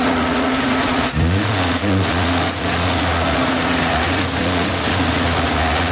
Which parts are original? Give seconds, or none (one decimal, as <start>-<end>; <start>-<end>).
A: none